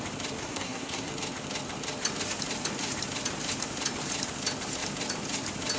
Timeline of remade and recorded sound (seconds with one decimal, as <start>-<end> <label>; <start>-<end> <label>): 0.0-0.4 recorded; 0.4-1.1 remade; 1.1-5.8 recorded